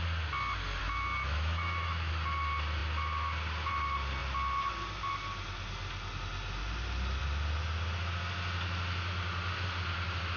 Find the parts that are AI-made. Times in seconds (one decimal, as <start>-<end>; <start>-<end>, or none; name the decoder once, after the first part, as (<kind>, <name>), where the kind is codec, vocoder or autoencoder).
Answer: 0.8-2.1 (autoencoder, DAC-VAE)